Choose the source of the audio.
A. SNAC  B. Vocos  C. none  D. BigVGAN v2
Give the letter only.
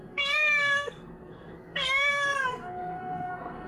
A